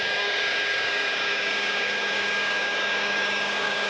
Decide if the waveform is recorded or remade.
remade